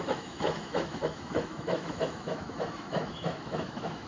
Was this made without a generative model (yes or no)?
no